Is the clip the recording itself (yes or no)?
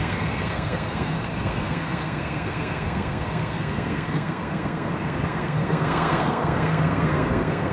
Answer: no